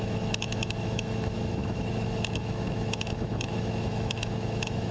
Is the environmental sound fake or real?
fake